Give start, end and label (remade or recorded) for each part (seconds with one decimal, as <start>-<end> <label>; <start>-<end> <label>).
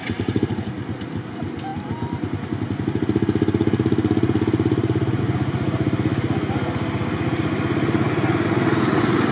0.0-9.3 recorded